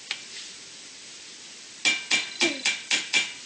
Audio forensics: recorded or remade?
recorded